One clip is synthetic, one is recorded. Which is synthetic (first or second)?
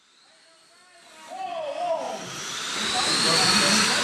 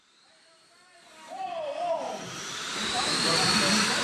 second